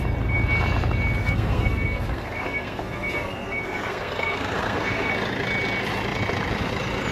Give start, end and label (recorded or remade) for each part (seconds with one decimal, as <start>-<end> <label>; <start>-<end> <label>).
0.0-1.2 recorded; 1.2-5.1 remade; 5.1-7.1 recorded

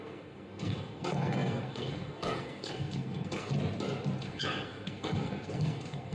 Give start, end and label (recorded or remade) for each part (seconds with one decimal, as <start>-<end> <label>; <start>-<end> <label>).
0.0-3.5 remade; 3.5-4.2 recorded; 4.2-6.1 remade

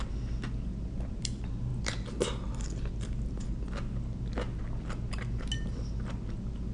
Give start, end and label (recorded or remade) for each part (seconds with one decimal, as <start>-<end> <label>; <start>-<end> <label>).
0.0-6.7 recorded

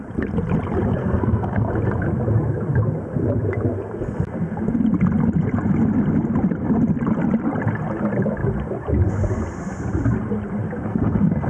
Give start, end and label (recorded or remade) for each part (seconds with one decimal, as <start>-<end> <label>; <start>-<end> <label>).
0.0-1.0 recorded; 1.0-1.7 remade; 1.7-10.9 recorded; 10.9-11.5 remade

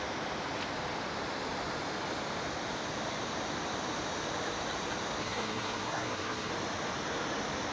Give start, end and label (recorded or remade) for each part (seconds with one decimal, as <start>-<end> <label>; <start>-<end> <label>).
0.0-5.2 recorded; 5.2-6.5 remade; 6.5-7.7 recorded

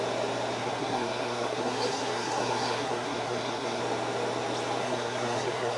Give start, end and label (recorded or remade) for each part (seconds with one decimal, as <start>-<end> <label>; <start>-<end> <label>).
0.0-0.6 recorded; 0.6-3.8 remade; 3.8-4.8 recorded; 4.8-5.8 remade